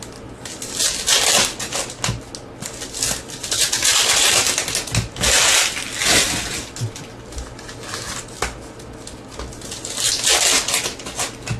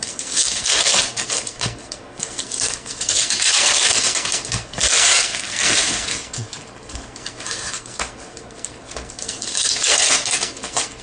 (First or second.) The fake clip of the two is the second